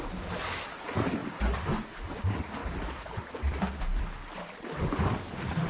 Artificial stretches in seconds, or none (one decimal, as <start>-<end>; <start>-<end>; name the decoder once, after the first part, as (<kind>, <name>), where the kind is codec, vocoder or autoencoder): none